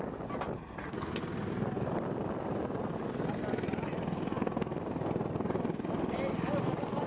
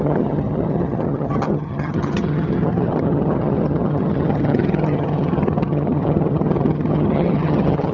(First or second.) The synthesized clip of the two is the second